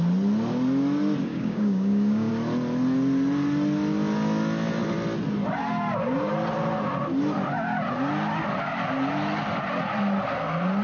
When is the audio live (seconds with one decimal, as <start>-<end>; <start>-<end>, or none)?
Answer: 0.0-1.3; 2.3-10.8